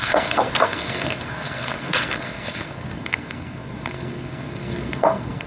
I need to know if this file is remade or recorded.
remade